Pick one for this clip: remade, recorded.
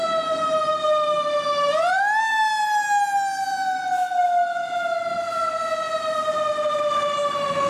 recorded